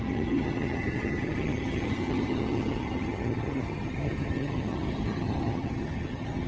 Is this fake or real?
fake